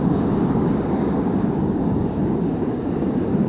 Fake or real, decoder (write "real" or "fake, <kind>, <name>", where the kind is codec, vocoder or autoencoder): fake, codec, DAC